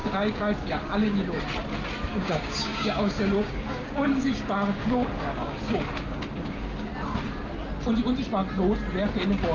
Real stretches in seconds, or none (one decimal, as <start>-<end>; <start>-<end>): 1.4-2.1; 6.9-9.5

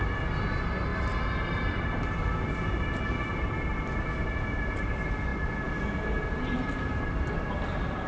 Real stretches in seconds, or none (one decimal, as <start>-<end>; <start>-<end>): 0.0-8.1

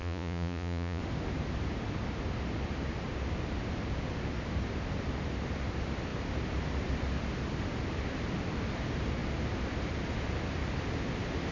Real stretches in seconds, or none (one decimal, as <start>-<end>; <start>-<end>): 1.0-11.5

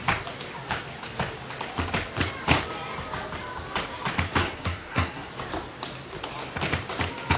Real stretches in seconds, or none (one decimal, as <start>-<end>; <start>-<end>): 0.0-4.4; 5.3-7.4